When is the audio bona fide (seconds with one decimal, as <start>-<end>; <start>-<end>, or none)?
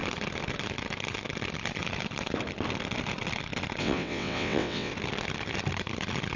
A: 0.0-3.8; 4.9-6.4